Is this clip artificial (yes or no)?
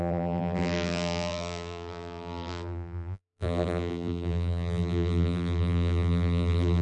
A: yes